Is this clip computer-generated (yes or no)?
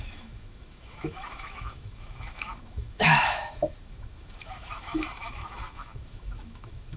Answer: yes